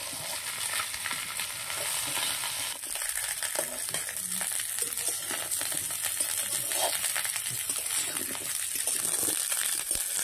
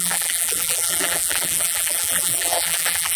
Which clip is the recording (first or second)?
first